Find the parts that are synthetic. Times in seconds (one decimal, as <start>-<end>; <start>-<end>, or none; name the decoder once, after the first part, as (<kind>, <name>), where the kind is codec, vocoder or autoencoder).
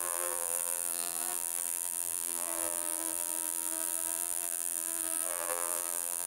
0.0-6.3 (vocoder, BigVGAN v2)